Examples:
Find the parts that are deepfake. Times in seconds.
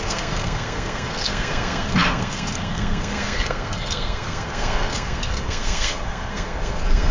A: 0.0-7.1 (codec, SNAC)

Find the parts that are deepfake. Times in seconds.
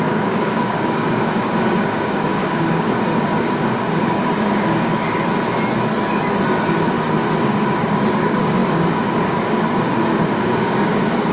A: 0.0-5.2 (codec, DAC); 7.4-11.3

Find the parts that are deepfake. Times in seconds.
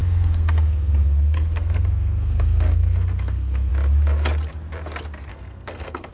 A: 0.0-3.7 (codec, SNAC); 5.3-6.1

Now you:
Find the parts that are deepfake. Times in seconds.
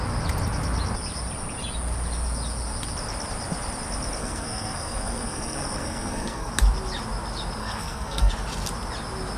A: 4.2-6.5 (codec, SNAC); 7.6-8.3